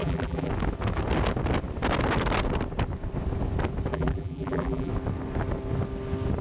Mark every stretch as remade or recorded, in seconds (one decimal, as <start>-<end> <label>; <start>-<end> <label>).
0.0-0.5 remade; 0.5-3.9 recorded; 3.9-4.9 remade; 4.9-6.4 recorded